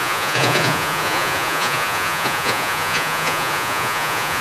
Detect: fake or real fake